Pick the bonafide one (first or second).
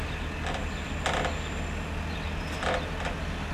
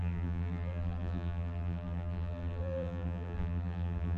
first